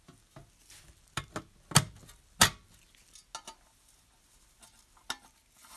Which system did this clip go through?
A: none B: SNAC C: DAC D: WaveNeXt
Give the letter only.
A